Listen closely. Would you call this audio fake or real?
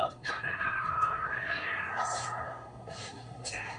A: fake